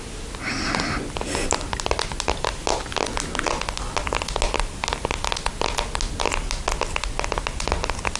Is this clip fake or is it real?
real